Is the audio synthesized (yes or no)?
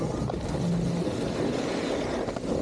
no